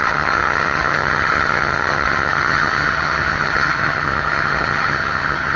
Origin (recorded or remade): remade